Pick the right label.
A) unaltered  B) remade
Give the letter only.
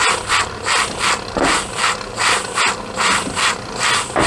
A